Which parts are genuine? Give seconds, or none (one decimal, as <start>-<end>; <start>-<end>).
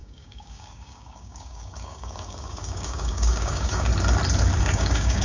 3.9-4.6